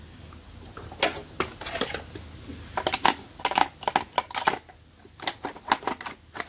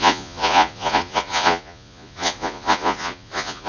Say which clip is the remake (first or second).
second